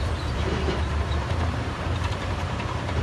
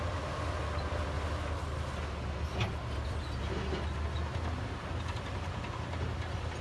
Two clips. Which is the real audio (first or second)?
second